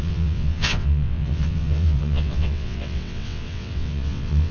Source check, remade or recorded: remade